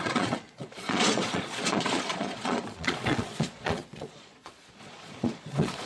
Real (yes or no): no